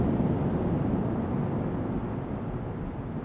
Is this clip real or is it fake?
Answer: real